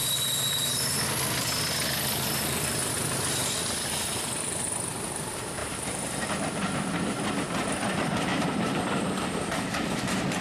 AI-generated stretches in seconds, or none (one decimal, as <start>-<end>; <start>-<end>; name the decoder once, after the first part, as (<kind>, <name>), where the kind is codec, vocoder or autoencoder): 5.6-6.3 (vocoder, BigVGAN v2); 8.3-10.4